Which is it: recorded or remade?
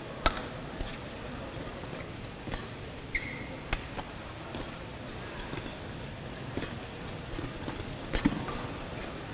recorded